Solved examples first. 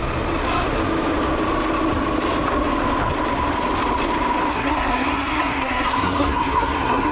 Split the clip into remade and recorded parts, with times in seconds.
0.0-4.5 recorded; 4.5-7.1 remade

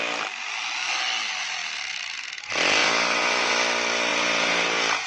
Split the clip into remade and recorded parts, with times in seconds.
0.0-2.8 recorded; 2.8-3.5 remade; 3.5-4.1 recorded; 4.1-5.1 remade

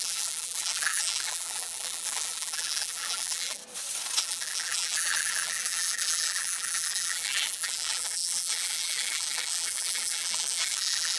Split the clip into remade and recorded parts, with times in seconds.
0.0-3.6 remade; 3.6-4.2 recorded; 4.2-11.2 remade

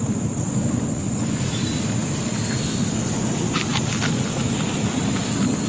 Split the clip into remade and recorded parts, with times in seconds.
0.0-0.6 recorded; 0.6-1.5 remade; 1.5-5.7 recorded

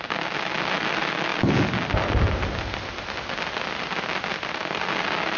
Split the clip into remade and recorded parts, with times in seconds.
0.0-5.4 recorded